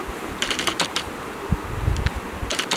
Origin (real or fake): fake